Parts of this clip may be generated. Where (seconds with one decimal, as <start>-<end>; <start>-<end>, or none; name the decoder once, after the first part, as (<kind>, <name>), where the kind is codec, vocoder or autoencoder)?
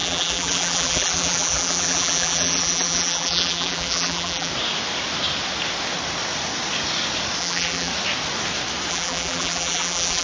0.0-4.5 (vocoder, BigVGAN v2); 7.4-7.9; 8.9-10.2